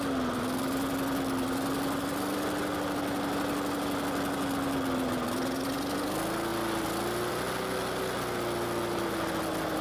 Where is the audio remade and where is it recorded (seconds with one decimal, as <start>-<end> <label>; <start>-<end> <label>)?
0.0-9.8 recorded